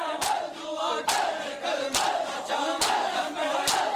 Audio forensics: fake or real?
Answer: real